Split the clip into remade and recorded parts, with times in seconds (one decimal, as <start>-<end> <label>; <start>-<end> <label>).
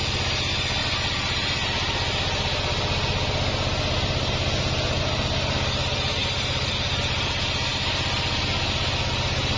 0.0-9.6 recorded